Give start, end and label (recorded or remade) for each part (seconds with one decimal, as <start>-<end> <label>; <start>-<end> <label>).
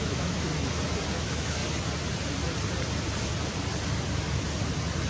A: 0.0-0.5 remade; 0.5-1.1 recorded; 1.1-1.6 remade; 1.6-5.1 recorded